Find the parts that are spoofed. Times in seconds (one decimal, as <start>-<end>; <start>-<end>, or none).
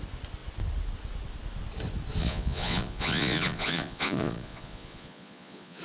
2.2-5.8